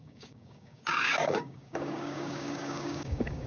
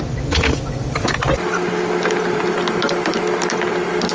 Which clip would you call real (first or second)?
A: second